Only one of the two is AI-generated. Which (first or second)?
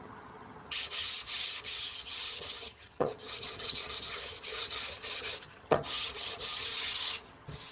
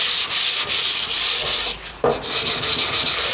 first